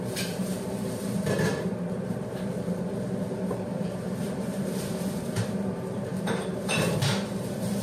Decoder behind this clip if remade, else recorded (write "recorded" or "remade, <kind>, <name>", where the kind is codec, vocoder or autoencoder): remade, vocoder, BigVGAN v2